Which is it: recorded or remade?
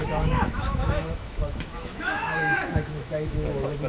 remade